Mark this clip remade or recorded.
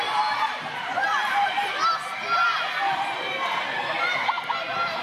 recorded